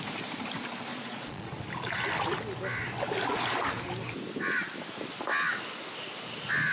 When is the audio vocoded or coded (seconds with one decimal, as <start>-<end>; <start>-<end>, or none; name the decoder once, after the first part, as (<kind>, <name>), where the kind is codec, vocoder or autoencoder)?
0.9-1.5 (vocoder, Vocos)